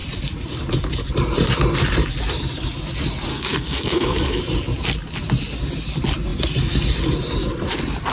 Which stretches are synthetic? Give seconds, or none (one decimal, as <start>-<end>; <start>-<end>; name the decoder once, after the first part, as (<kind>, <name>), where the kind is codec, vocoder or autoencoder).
3.3-4.4 (codec, SNAC)